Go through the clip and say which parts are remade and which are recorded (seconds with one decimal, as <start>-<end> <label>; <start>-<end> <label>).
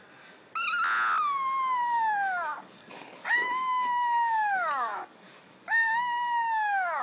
0.0-2.5 recorded; 2.5-7.0 remade